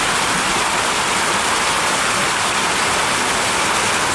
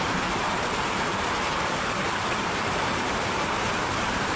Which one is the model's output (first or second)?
second